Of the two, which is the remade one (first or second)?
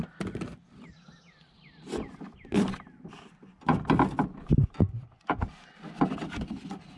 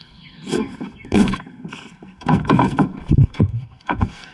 second